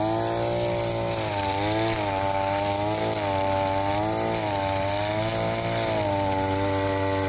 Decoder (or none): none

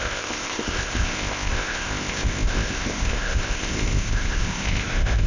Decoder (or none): codec, ZipCodec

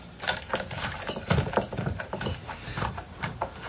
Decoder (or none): vocoder, BigVGAN v2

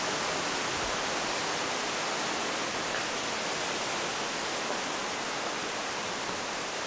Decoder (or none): none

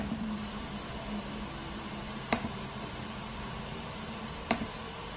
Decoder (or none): vocoder, BigVGAN v2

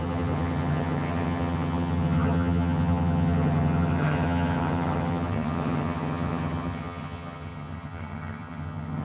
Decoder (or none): vocoder, HiFi-GAN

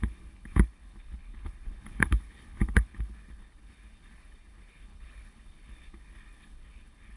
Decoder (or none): codec, HILCodec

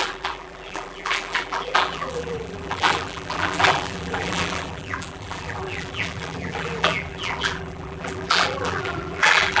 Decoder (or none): vocoder, BigVGAN v2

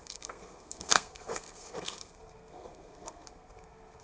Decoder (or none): codec, SNAC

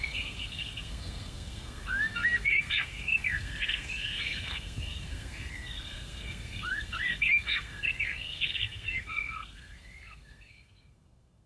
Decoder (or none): codec, SNAC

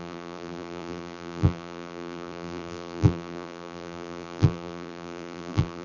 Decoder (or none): vocoder, BigVGAN v2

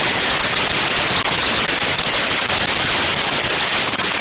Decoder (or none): none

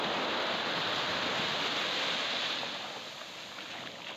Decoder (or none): none